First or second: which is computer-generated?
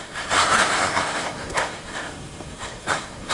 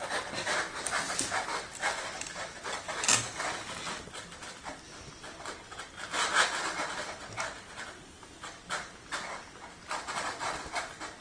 first